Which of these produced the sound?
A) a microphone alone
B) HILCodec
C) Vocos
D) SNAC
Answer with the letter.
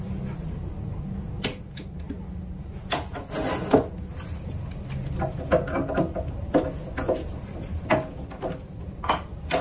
A